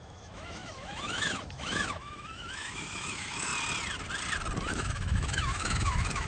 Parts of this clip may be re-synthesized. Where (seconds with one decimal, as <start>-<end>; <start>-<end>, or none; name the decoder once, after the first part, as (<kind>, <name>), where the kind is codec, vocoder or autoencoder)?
0.0-3.5 (autoencoder, DAC-VAE); 4.7-6.3